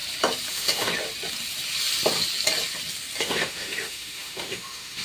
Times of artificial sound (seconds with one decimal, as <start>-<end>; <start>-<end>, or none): 0.5-0.9; 3.2-5.0